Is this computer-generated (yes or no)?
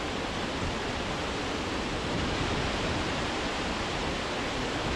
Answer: no